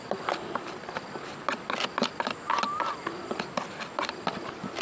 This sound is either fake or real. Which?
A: real